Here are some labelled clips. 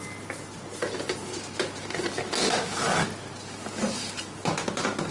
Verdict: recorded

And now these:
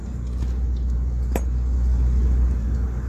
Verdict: recorded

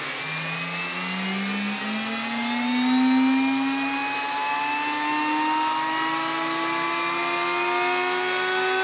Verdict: recorded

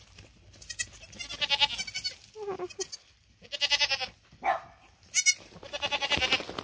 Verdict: recorded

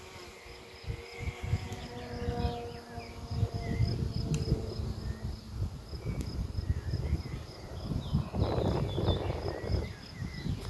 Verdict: recorded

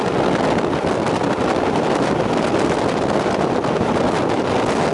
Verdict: recorded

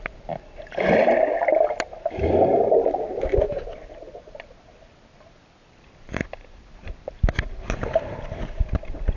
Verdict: recorded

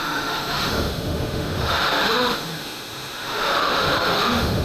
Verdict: remade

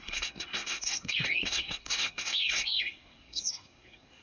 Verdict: remade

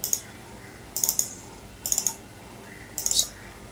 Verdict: recorded